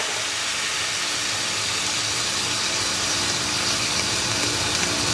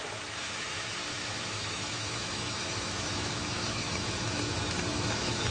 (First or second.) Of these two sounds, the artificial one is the second